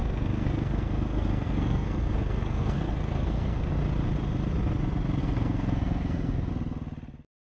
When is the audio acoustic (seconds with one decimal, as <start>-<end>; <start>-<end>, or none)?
3.7-5.2; 6.5-7.6

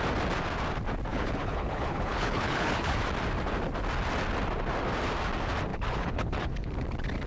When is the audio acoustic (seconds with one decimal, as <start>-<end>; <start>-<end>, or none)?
0.0-1.1; 3.0-5.7; 6.7-7.3

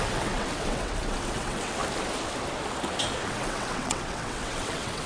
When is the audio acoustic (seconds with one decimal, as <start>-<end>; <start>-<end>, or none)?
1.8-3.3

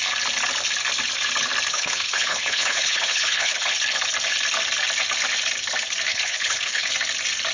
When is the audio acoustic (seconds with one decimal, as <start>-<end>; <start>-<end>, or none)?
0.0-1.7; 3.7-6.1; 6.9-7.5